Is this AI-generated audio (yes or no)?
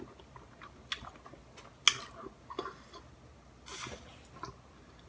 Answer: no